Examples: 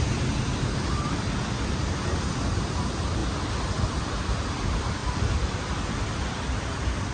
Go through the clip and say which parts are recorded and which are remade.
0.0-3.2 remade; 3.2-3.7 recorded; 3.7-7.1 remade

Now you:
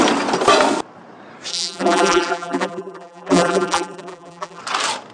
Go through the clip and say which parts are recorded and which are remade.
0.0-1.5 recorded; 1.5-4.6 remade; 4.6-5.1 recorded